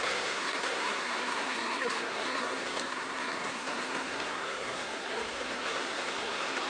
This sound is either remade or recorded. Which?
remade